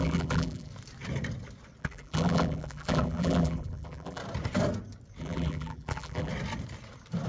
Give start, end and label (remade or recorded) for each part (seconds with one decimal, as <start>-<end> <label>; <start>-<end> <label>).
0.0-0.7 remade; 0.7-1.8 recorded; 1.8-4.2 remade; 4.2-5.2 recorded; 5.2-6.3 remade; 6.3-7.3 recorded